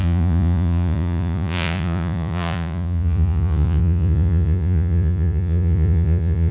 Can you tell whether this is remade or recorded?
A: remade